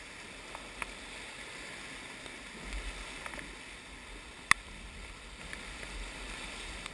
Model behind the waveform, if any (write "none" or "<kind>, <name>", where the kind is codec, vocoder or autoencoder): none